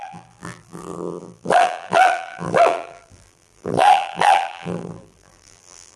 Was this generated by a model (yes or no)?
yes